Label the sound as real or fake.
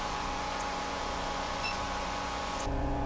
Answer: fake